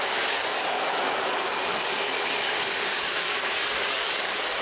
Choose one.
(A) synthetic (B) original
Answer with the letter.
A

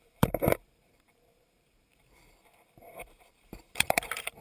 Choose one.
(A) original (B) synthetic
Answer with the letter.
B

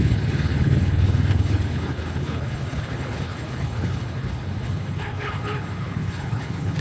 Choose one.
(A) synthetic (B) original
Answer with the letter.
A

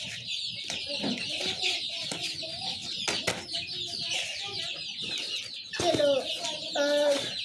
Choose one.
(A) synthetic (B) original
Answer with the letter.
B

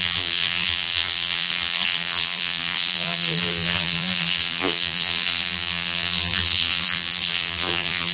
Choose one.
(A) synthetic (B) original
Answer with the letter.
A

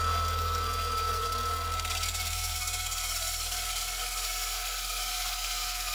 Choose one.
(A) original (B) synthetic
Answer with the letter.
B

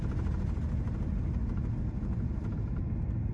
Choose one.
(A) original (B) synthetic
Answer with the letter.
A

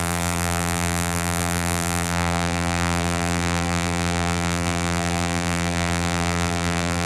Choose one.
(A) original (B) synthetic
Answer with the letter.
B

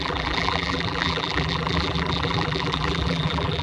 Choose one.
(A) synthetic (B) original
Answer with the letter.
A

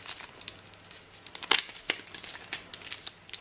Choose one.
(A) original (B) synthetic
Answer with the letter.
A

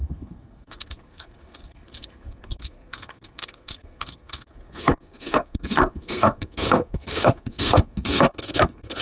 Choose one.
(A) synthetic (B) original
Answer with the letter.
A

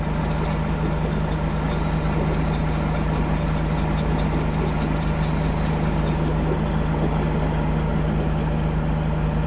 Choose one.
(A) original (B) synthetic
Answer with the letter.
A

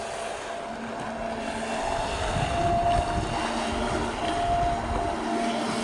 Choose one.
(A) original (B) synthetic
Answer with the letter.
A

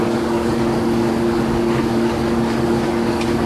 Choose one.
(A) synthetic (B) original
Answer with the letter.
A